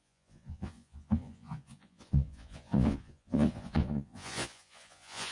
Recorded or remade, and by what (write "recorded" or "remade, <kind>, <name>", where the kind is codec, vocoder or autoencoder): remade, vocoder, Vocos